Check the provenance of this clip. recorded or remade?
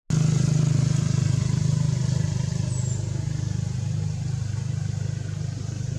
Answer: recorded